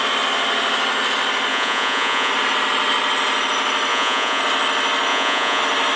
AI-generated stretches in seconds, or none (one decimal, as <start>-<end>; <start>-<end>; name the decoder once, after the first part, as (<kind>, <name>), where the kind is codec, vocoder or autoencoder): 1.5-2.3 (vocoder, Vocos); 3.9-4.4; 5.1-5.6